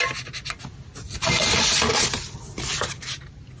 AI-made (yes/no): no